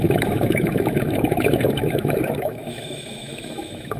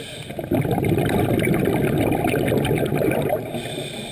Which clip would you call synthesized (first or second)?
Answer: first